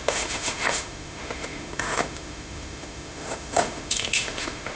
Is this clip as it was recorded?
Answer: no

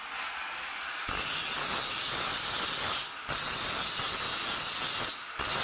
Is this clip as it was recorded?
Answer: yes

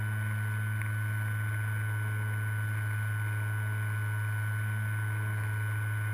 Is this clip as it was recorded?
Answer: yes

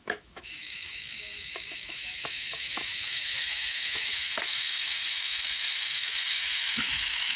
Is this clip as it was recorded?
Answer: no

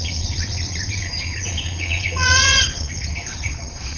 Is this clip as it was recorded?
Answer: no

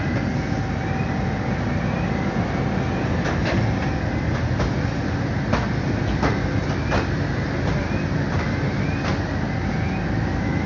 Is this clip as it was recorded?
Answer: yes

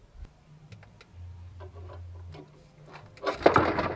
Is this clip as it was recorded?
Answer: yes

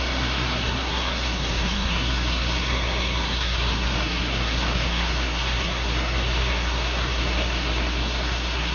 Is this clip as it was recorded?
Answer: no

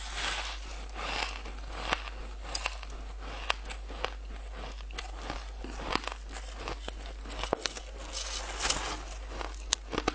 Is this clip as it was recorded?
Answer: yes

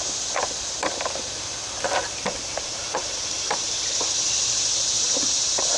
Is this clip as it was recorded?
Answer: no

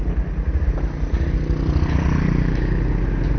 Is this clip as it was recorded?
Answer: yes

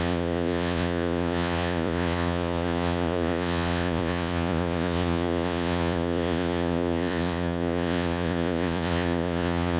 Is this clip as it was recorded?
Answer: no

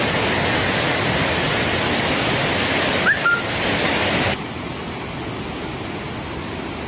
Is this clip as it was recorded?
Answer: yes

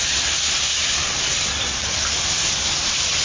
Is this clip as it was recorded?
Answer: yes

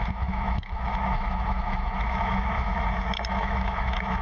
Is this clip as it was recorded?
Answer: no